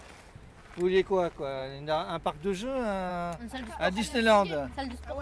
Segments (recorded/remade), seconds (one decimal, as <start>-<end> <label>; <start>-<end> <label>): 0.0-5.2 recorded